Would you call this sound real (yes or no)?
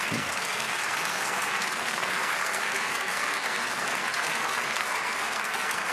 no